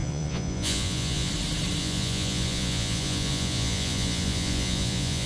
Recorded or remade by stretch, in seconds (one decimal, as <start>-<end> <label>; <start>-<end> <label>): 0.0-1.3 remade; 1.3-1.8 recorded; 1.8-5.3 remade